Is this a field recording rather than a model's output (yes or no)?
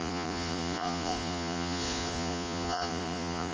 no